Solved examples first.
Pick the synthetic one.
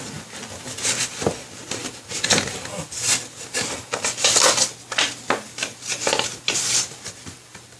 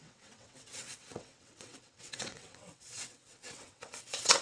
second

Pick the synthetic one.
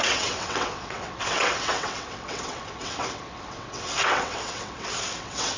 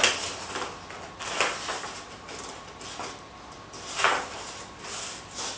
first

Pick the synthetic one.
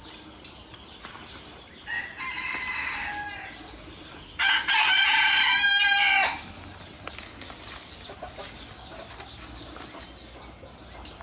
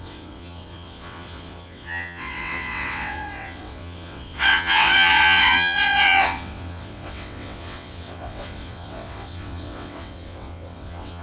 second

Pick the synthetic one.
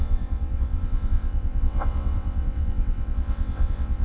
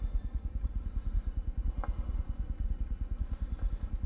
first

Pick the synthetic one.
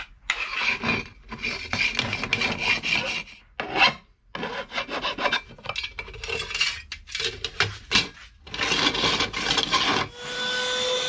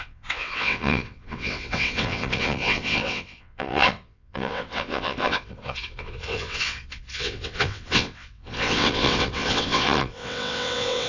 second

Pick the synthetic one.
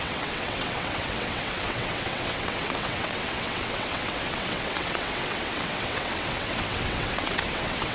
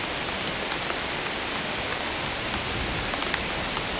first